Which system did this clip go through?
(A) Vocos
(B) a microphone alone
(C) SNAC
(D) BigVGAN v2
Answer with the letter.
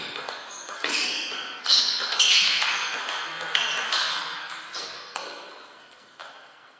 C